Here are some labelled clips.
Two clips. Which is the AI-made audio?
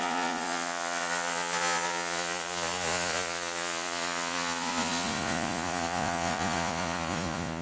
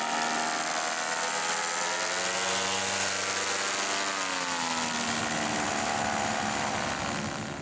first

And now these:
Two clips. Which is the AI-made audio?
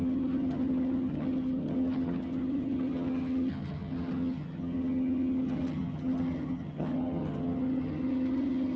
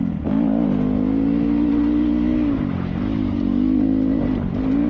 first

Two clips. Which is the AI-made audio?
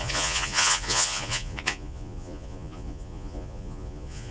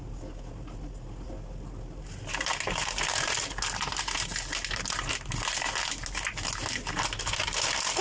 first